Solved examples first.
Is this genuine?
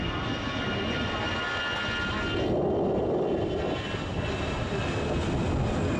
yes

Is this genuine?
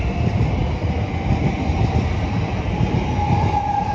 yes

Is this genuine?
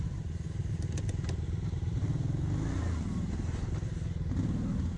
yes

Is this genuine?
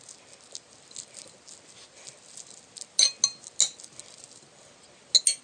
yes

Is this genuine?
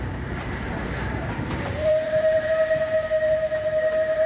no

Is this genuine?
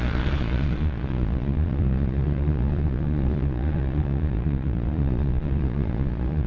no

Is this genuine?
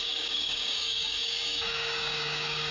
no